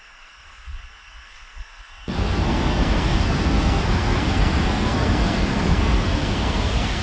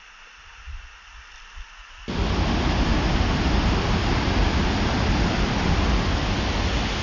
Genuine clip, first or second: second